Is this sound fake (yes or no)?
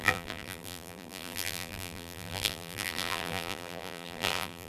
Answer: yes